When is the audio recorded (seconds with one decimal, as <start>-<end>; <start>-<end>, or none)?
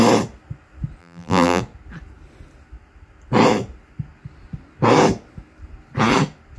0.0-1.0; 1.6-6.6